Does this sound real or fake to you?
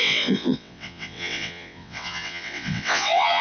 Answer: fake